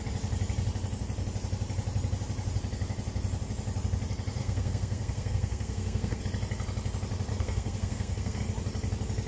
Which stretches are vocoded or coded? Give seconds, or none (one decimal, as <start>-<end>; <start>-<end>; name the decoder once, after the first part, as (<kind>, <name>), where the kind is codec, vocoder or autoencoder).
4.4-6.2 (codec, SNAC); 7.3-8.4